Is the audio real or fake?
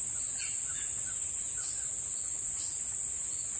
real